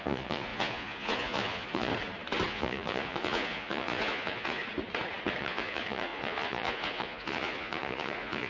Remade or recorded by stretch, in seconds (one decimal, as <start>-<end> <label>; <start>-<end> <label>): 0.0-1.9 remade; 1.9-2.5 recorded; 2.5-4.6 remade; 4.6-5.4 recorded; 5.4-8.5 remade